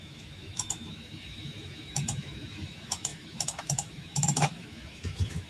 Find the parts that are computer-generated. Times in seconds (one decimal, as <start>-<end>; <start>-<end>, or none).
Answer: 0.0-5.5